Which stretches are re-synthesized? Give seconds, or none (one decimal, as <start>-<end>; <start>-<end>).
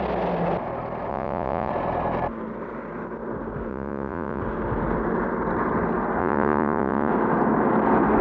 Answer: 1.1-1.7; 3.7-4.4; 6.2-7.1